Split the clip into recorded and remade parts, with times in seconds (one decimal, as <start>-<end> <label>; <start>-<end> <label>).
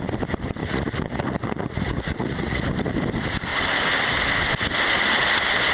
0.0-0.6 recorded; 0.6-2.7 remade; 2.7-5.7 recorded